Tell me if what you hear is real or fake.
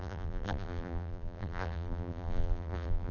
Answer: fake